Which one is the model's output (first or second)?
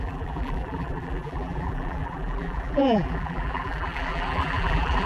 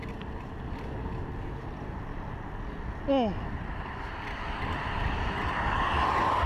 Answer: first